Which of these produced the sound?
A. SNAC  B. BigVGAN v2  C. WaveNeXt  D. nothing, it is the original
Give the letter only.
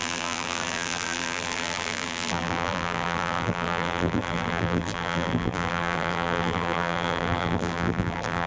B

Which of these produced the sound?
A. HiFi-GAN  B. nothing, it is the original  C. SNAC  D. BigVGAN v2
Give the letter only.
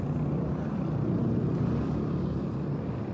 D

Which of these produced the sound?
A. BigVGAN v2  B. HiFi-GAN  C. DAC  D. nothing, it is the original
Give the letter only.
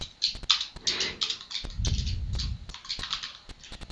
D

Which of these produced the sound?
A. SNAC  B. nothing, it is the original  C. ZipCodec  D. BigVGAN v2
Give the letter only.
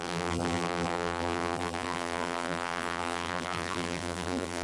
D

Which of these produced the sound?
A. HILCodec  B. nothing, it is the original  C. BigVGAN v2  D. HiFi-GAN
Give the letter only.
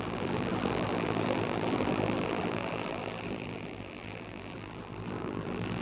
C